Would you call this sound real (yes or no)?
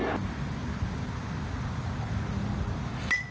yes